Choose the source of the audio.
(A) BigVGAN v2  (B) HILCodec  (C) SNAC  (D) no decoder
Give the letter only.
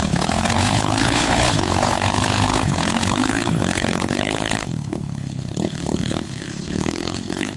B